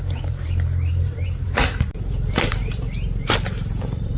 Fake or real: fake